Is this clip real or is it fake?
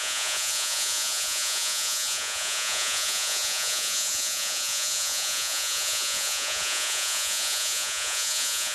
fake